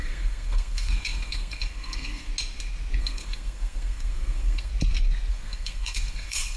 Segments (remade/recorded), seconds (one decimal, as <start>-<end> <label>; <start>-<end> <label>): 0.0-2.3 remade; 2.3-3.0 recorded; 3.0-4.7 remade; 4.7-5.3 recorded; 5.3-6.6 remade

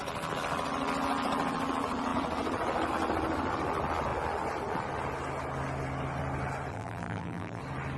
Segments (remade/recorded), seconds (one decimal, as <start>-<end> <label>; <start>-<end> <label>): 0.0-6.7 recorded; 6.7-7.6 remade; 7.6-8.0 recorded